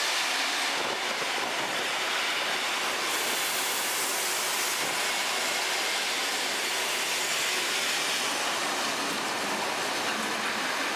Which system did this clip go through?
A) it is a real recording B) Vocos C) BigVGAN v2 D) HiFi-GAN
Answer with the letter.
A